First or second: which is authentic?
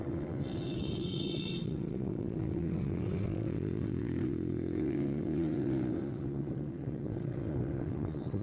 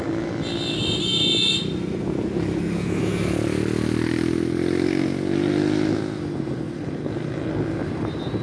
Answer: second